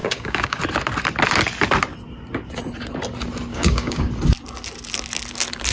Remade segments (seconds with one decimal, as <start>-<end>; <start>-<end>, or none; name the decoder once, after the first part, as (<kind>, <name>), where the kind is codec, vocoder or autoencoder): 0.0-0.6 (codec, DAC); 3.5-4.1